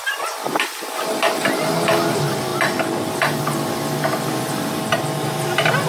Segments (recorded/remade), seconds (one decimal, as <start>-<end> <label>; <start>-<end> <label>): 0.0-5.9 recorded